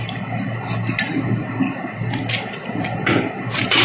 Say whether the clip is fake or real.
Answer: real